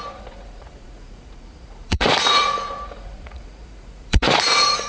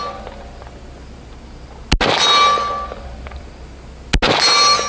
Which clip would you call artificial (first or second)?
first